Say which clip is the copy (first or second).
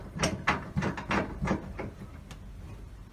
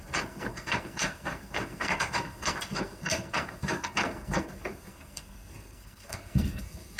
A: second